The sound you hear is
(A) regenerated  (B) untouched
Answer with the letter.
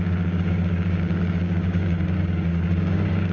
A